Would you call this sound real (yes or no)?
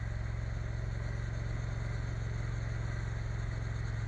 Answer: yes